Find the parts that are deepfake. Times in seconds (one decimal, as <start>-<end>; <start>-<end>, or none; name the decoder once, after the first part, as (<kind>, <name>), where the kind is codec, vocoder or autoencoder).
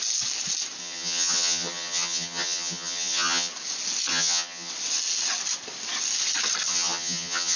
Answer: 0.8-3.5 (vocoder, HiFi-GAN); 4.1-4.7; 6.7-7.6